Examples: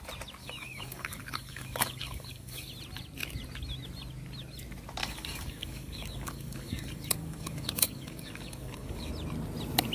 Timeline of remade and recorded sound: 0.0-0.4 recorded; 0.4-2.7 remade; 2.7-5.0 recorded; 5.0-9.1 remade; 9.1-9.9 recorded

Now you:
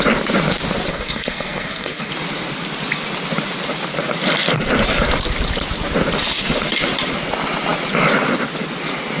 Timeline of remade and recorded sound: 0.0-0.9 recorded; 0.9-2.1 remade; 2.1-9.2 recorded

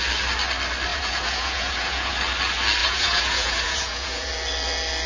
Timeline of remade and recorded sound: 0.0-0.9 recorded; 0.9-2.1 remade; 2.1-2.8 recorded; 2.8-4.3 remade; 4.3-5.1 recorded

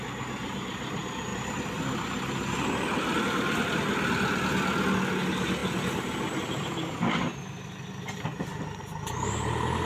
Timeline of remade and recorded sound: 0.0-9.9 recorded

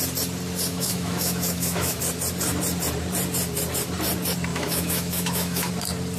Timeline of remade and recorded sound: 0.0-0.7 recorded; 0.7-2.0 remade; 2.0-4.5 recorded; 4.5-5.7 remade; 5.7-6.2 recorded

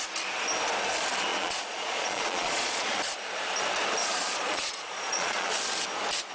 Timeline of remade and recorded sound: 0.0-1.3 recorded; 1.3-3.0 remade; 3.0-4.0 recorded; 4.0-5.5 remade; 5.5-6.3 recorded